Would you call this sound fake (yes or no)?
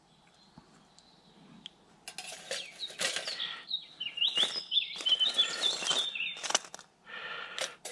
no